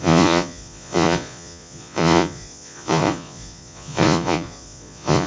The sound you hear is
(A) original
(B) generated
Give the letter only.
B